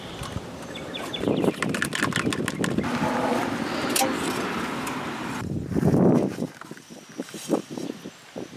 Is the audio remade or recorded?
recorded